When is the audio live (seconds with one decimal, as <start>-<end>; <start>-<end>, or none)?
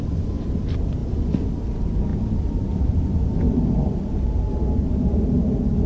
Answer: 0.0-5.9